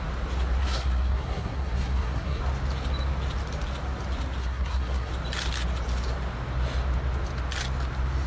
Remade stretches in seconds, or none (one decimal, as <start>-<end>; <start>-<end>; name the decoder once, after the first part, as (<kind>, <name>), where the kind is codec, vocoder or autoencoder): 0.6-2.4 (codec, SNAC); 4.4-5.1